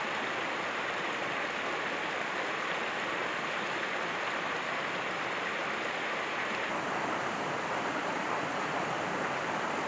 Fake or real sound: real